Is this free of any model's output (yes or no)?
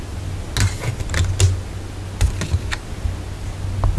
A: yes